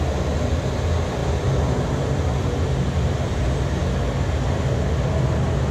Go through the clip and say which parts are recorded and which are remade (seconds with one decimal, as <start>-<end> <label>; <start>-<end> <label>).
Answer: 0.0-5.7 recorded